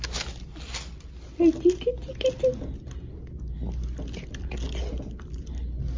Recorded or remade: recorded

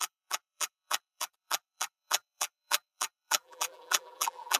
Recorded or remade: remade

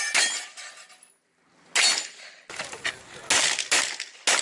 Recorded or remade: recorded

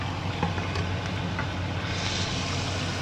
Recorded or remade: recorded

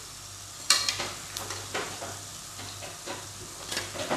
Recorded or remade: remade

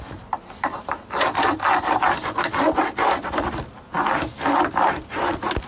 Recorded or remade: recorded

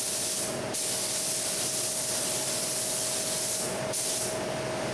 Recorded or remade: recorded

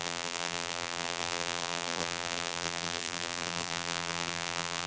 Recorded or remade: remade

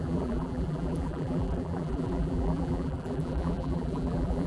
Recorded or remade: remade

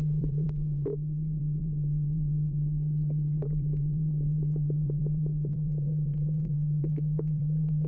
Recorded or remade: remade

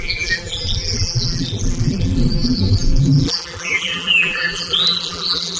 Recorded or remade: remade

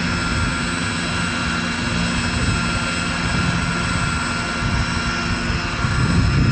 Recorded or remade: recorded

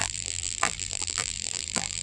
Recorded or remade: remade